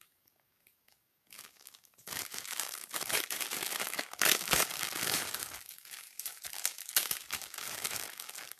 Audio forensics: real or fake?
fake